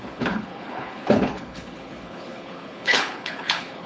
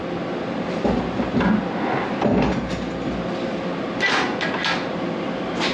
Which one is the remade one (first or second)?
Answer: first